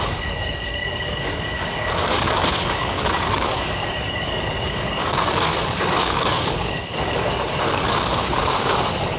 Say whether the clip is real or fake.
fake